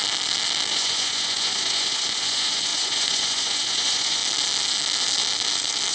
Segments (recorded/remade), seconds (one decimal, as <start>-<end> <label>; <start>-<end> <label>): 0.0-0.7 recorded; 0.7-4.2 remade; 4.2-5.9 recorded